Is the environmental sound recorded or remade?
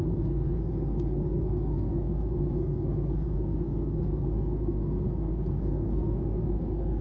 remade